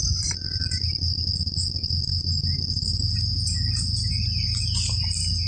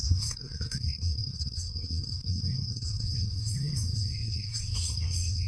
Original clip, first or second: first